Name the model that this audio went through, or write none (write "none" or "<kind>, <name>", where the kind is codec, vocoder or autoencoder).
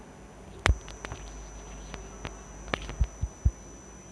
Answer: none